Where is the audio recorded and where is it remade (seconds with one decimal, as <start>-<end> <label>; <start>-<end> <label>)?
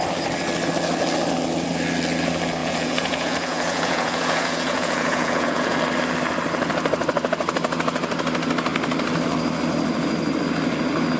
0.0-2.6 recorded; 2.6-5.8 remade; 5.8-11.2 recorded